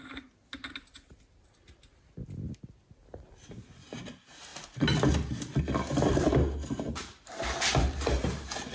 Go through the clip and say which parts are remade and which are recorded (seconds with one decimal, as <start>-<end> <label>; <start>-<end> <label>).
0.0-8.7 recorded